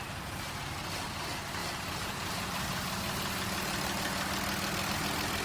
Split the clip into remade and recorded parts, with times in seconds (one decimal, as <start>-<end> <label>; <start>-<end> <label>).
0.0-5.4 recorded